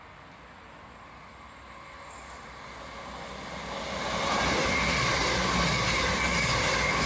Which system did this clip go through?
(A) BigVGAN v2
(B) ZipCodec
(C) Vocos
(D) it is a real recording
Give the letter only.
D